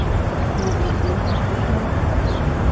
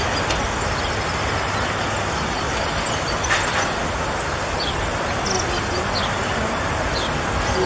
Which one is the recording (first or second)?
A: second